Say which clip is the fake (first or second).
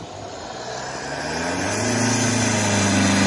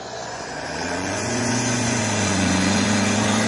second